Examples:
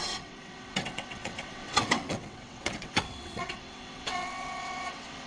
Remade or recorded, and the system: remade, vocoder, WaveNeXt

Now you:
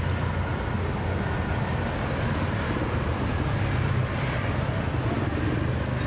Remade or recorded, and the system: recorded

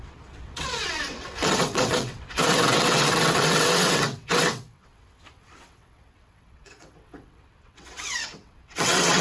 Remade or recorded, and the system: remade, vocoder, WaveNeXt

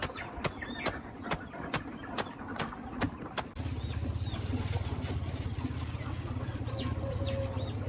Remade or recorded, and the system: recorded